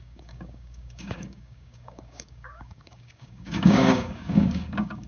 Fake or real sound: fake